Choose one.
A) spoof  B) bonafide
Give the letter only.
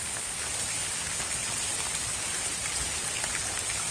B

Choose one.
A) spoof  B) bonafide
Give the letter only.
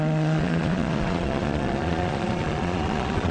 A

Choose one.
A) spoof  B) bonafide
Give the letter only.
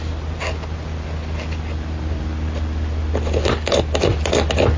B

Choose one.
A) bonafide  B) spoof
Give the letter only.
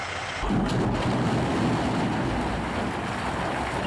A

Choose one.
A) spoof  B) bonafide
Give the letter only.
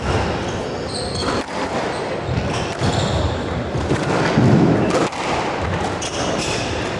B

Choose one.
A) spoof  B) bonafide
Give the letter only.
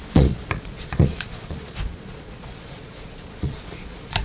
A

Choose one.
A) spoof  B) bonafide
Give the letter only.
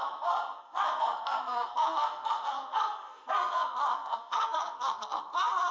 A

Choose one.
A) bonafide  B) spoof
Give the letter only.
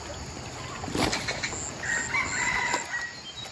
A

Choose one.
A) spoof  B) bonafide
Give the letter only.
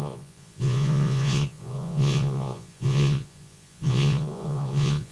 A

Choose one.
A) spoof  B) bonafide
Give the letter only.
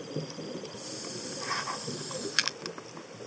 B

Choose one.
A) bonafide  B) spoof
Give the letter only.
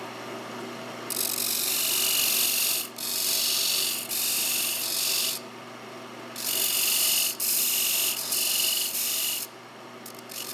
A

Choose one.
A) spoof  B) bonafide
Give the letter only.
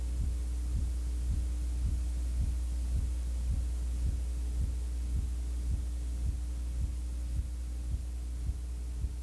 B